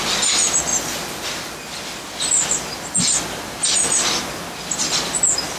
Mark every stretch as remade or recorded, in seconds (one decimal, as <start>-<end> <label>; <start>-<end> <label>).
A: 0.0-5.6 recorded